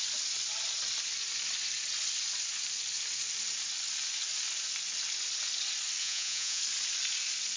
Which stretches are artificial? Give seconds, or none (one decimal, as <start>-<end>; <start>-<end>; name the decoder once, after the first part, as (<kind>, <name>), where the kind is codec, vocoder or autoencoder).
6.0-6.6 (vocoder, Vocos)